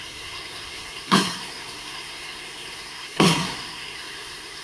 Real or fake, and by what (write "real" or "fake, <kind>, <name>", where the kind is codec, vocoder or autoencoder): fake, codec, SNAC